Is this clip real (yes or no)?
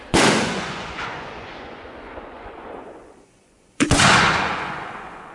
no